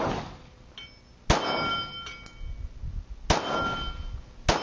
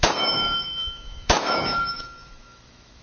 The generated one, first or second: second